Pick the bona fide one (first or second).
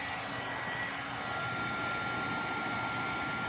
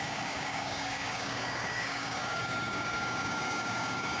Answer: first